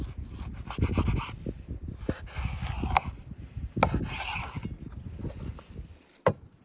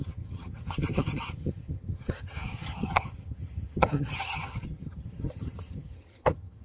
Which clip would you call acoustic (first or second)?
first